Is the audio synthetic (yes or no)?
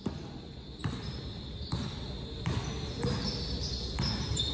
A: no